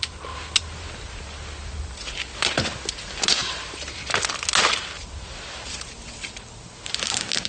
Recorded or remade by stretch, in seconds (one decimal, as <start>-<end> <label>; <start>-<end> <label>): 0.0-7.5 recorded

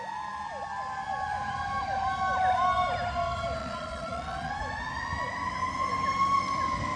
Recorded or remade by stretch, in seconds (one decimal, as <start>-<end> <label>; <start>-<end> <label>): 0.0-3.6 recorded; 3.6-4.5 remade; 4.5-7.0 recorded